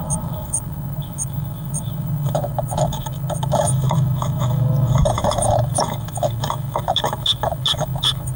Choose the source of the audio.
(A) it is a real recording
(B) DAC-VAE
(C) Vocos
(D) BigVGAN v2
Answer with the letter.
B